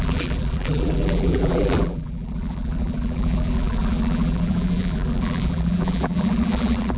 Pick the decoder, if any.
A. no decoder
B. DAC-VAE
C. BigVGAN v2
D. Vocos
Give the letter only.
C